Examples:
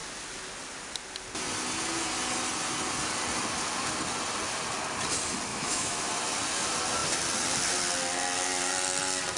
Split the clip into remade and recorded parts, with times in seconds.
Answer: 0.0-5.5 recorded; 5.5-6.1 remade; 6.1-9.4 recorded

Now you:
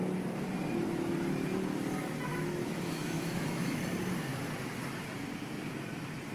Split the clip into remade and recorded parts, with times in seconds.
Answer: 0.0-2.3 recorded; 2.3-3.8 remade; 3.8-6.3 recorded

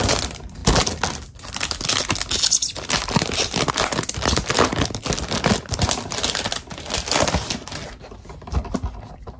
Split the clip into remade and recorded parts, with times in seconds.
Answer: 0.0-9.4 recorded

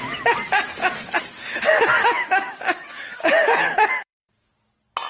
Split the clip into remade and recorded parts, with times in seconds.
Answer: 0.0-1.4 recorded; 1.4-4.5 remade; 4.5-5.1 recorded

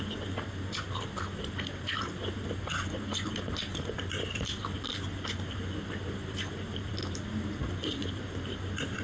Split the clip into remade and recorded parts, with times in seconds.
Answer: 0.0-9.0 recorded

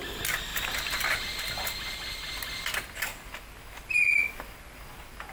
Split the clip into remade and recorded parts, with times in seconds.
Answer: 0.0-5.3 recorded

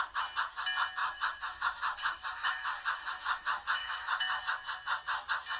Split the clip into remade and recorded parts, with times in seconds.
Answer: 0.0-1.0 recorded; 1.0-4.4 remade; 4.4-5.6 recorded